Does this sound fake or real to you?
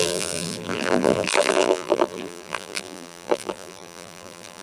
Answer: fake